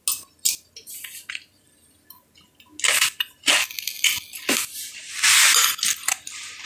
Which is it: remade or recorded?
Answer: recorded